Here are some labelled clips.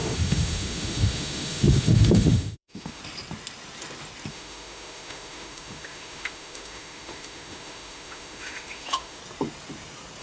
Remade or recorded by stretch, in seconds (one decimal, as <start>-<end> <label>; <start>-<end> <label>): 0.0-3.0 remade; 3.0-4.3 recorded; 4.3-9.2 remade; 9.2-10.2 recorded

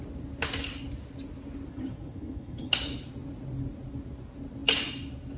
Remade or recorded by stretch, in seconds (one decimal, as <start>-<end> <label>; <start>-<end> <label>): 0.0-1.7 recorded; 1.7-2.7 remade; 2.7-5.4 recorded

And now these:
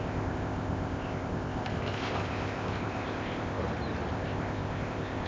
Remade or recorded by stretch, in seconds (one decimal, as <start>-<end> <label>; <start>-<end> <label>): 0.0-3.6 remade; 3.6-4.1 recorded; 4.1-5.3 remade